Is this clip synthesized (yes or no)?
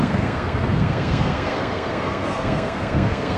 yes